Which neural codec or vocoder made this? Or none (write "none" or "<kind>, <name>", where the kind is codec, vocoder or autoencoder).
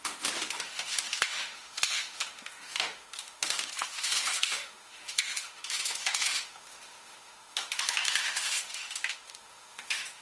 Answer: autoencoder, DAC-VAE